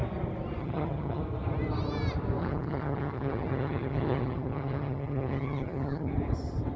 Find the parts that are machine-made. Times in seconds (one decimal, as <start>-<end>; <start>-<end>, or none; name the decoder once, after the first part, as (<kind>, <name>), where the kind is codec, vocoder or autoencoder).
0.6-1.2 (vocoder, HiFi-GAN); 2.4-6.1